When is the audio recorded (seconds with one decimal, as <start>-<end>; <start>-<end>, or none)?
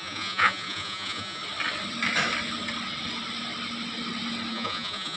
1.4-4.5